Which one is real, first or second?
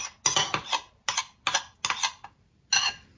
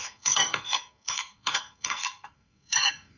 first